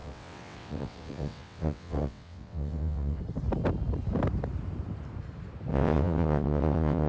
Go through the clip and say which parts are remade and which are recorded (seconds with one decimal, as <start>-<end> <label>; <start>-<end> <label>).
0.0-3.2 remade; 3.2-5.7 recorded; 5.7-7.1 remade